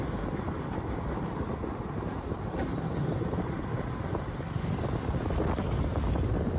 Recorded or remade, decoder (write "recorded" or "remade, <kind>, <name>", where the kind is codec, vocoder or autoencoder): recorded